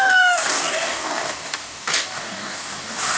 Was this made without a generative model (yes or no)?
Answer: no